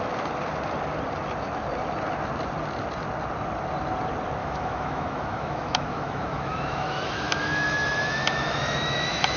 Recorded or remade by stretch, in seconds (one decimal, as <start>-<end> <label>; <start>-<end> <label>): 0.0-4.4 recorded; 4.4-9.4 remade